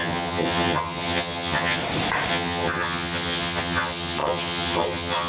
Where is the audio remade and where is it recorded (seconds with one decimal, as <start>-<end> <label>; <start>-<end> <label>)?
0.0-1.8 remade; 1.8-2.3 recorded; 2.3-5.3 remade

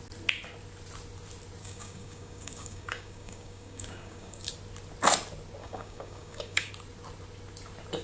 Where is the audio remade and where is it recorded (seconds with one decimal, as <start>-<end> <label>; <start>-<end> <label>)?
0.0-1.6 recorded; 1.6-4.5 remade; 4.5-5.6 recorded; 5.6-6.7 remade; 6.7-8.0 recorded